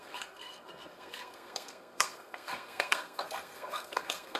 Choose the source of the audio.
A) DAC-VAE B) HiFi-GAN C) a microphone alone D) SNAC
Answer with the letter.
D